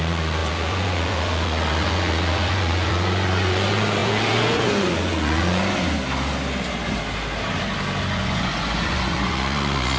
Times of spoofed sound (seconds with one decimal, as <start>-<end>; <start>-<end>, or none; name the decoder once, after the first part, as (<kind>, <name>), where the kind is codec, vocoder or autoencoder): 0.0-5.6 (vocoder, Vocos); 8.0-10.0